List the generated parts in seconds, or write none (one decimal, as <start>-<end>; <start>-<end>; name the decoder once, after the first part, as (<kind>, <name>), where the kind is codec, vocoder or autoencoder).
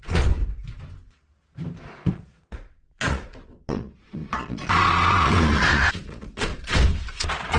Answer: 0.0-0.4 (vocoder, Vocos); 2.1-6.5; 7.1-7.6